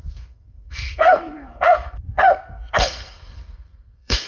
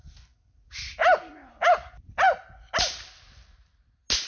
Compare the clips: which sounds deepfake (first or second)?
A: first